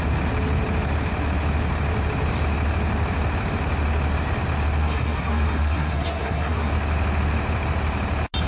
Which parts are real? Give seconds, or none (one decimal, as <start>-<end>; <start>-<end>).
0.0-4.8; 6.7-8.5